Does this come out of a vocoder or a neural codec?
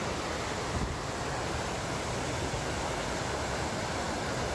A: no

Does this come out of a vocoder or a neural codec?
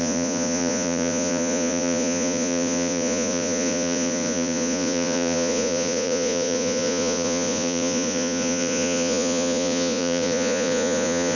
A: yes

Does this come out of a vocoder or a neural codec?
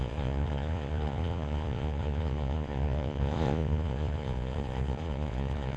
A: yes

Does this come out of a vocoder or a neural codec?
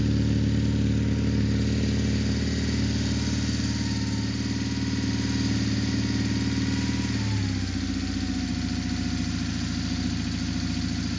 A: no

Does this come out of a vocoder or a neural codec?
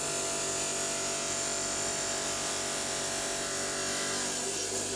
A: no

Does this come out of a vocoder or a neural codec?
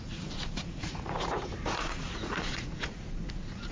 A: yes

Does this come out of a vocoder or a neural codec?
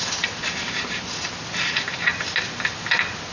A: no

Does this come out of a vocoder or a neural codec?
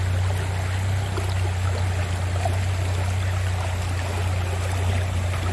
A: no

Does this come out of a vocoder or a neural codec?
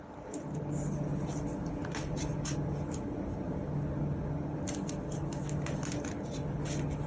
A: no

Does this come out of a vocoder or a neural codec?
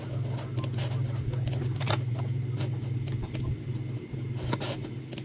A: no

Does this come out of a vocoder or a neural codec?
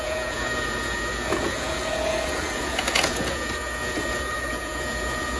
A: yes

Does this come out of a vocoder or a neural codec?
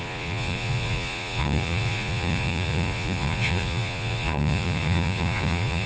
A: yes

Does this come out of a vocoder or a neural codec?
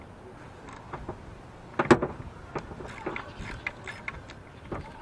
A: no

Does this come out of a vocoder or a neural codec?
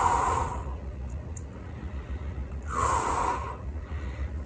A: yes